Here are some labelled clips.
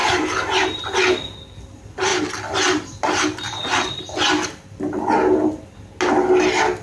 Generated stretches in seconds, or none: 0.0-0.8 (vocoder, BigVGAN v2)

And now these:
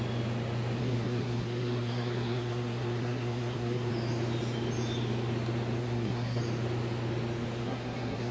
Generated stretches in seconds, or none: 0.8-3.9 (codec, SNAC); 5.8-6.4; 7.6-8.3

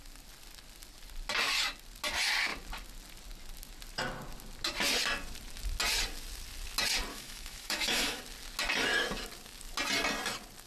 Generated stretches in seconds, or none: 7.1-8.2 (autoencoder, DAC-VAE)

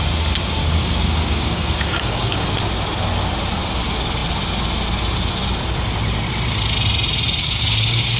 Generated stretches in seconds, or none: 0.6-2.5 (codec, DAC); 7.4-8.2

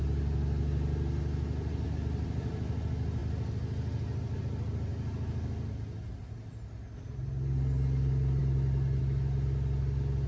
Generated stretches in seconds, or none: none

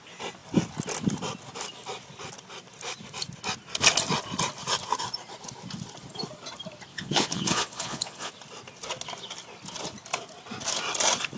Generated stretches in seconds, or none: 6.9-8.3 (vocoder, Vocos)

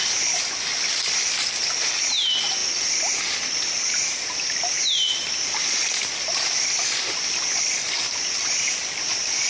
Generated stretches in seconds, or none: none